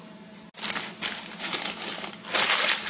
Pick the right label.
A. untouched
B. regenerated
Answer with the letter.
A